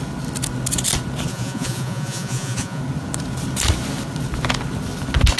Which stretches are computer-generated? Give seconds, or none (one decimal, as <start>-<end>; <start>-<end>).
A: 1.3-2.8